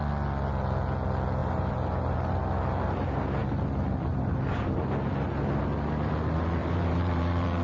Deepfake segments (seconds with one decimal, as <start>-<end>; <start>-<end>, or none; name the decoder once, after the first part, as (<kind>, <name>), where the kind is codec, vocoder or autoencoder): 1.4-2.3 (vocoder, BigVGAN v2); 6.6-7.6